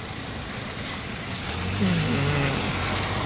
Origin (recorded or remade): recorded